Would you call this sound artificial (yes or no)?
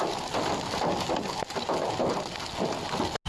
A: no